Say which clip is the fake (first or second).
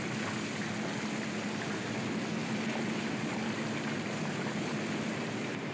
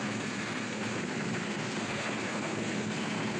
second